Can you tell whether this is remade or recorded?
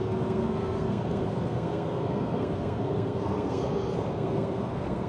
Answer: remade